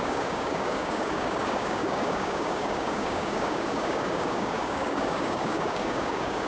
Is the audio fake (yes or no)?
yes